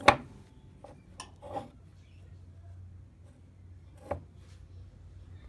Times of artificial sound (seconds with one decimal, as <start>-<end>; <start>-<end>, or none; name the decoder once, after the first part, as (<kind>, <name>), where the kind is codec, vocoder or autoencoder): none